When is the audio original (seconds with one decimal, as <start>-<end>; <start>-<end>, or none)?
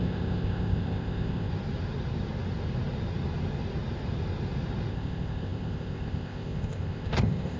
1.5-4.9